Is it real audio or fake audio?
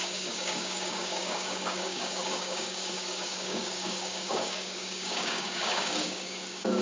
fake